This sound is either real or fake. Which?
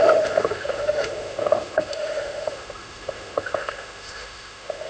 fake